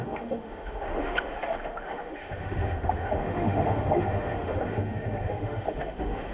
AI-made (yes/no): yes